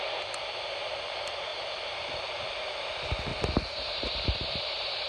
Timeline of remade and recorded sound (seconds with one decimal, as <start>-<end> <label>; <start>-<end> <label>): 0.0-1.5 recorded; 1.5-2.2 remade; 2.2-3.3 recorded; 3.3-5.1 remade